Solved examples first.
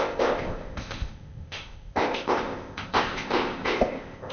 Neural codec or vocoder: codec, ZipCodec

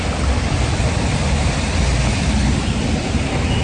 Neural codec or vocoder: vocoder, BigVGAN v2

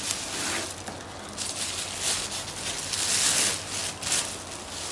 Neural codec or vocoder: none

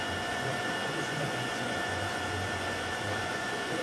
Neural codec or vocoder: vocoder, Vocos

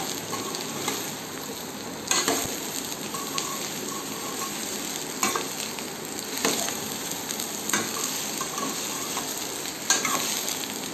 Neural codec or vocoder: none